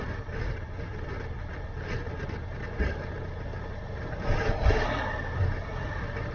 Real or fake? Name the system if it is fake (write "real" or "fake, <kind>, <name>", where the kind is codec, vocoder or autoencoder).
real